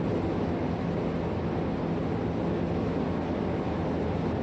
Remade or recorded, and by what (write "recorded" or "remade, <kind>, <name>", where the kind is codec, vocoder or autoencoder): recorded